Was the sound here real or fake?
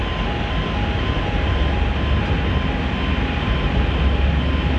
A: real